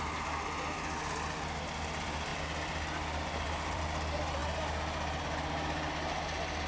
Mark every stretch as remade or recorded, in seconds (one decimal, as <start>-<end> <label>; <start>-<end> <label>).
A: 0.0-2.3 recorded; 2.3-3.8 remade; 3.8-6.7 recorded